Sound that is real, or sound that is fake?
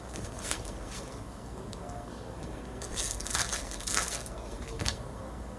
fake